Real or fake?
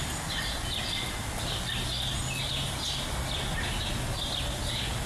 real